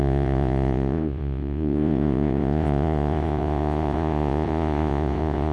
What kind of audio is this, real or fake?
fake